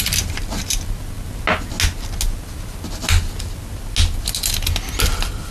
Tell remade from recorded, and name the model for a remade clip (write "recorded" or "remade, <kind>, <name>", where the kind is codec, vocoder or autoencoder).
recorded